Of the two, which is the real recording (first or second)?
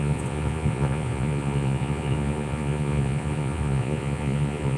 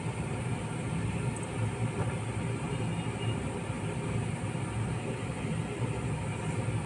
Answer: second